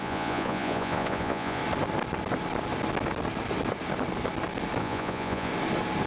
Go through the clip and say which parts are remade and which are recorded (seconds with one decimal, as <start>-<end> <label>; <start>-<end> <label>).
0.0-1.6 remade; 1.6-4.8 recorded; 4.8-5.5 remade; 5.5-6.1 recorded